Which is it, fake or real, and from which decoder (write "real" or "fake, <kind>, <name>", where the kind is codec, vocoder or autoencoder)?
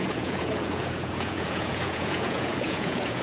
fake, vocoder, Vocos